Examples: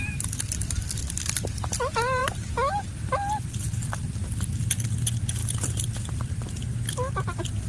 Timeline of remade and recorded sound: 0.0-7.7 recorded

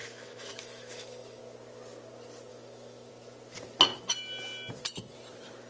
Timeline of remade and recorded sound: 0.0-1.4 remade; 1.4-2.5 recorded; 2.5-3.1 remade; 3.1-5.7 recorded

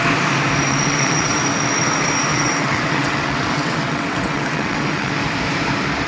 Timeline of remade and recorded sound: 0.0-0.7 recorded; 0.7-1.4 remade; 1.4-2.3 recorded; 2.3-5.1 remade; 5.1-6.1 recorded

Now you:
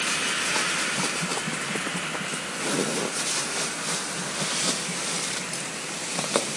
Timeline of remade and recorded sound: 0.0-6.6 recorded